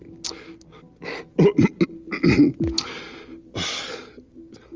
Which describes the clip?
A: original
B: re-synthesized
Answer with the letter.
A